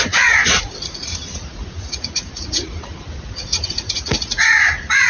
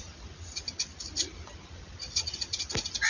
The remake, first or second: first